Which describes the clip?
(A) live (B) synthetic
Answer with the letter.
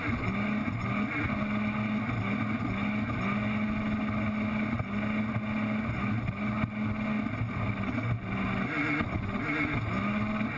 A